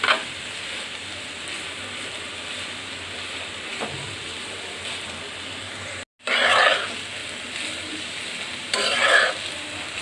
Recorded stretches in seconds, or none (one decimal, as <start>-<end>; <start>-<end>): 0.0-3.7; 5.7-7.2; 8.2-10.0